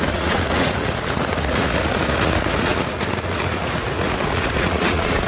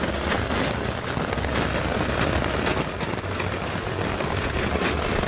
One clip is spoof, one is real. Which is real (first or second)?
second